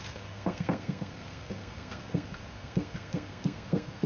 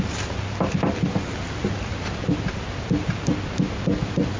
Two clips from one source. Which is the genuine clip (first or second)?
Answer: second